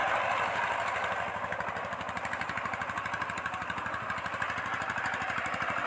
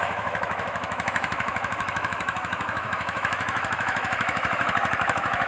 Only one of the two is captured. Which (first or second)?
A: first